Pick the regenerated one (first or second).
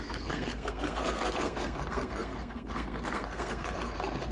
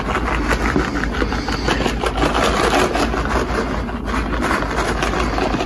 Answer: first